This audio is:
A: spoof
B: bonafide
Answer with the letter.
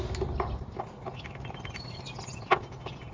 B